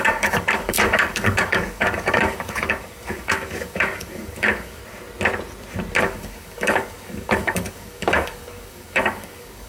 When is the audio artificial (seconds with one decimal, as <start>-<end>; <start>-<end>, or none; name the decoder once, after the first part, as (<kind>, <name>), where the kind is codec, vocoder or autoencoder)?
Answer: 0.0-4.8 (codec, DAC); 6.0-9.7

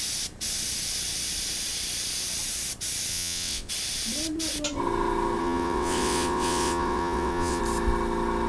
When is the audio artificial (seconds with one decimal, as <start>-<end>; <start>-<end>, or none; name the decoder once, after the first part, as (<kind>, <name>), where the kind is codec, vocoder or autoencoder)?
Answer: 3.1-3.7 (vocoder, WaveNeXt); 5.4-7.6

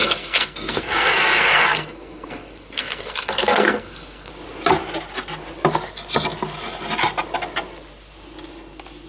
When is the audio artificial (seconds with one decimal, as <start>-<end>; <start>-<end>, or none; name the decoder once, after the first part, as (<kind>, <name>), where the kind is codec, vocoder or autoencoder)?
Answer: 0.0-4.3 (codec, SNAC)

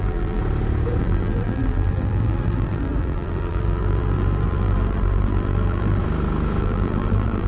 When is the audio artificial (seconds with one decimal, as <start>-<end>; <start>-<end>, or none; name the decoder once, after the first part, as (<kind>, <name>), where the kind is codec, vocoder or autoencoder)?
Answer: 0.0-0.4 (vocoder, BigVGAN v2); 1.0-6.0; 6.6-7.5